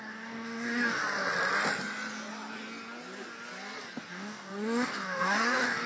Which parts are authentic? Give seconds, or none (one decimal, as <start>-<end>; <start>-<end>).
1.0-4.1